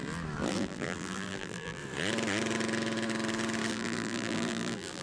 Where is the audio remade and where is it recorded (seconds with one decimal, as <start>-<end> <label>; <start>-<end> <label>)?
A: 0.0-0.5 recorded; 0.5-1.8 remade; 1.8-3.7 recorded; 3.7-5.0 remade

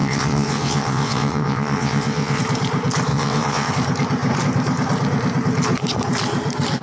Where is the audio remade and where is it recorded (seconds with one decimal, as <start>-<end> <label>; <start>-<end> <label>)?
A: 0.0-2.4 remade; 2.4-3.1 recorded; 3.1-3.7 remade; 3.7-6.8 recorded

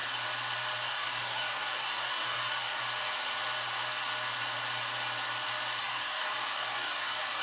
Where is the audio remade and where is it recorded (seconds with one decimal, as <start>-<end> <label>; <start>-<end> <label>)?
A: 0.0-0.9 recorded; 0.9-2.8 remade; 2.8-5.8 recorded; 5.8-7.4 remade

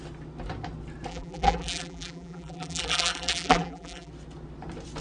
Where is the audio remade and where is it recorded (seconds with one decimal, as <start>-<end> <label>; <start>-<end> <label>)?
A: 0.0-1.1 recorded; 1.1-4.1 remade; 4.1-5.0 recorded